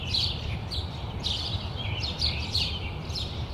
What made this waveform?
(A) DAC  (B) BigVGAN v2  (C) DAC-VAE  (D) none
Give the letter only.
B